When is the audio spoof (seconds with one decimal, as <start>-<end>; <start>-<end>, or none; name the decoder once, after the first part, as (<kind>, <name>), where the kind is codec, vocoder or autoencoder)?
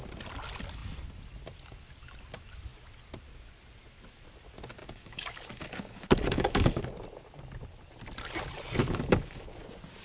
4.8-6.9 (codec, DAC); 8.8-9.4